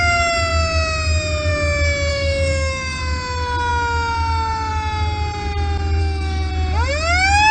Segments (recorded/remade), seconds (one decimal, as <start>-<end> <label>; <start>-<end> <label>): 0.0-2.1 recorded; 2.1-3.0 remade; 3.0-6.0 recorded; 6.0-6.5 remade; 6.5-7.5 recorded